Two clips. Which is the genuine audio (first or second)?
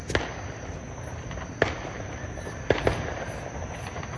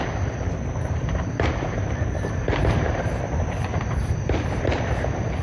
first